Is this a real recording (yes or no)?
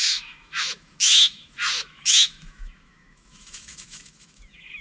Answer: no